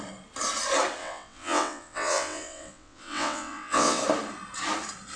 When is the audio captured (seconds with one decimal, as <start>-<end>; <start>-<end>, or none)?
0.0-1.0; 4.0-5.2